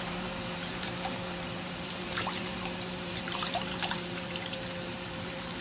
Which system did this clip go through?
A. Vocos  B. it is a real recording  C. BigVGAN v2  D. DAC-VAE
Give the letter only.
C